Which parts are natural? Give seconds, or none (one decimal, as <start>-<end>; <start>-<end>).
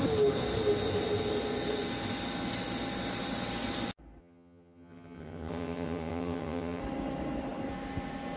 0.0-4.2; 6.8-8.4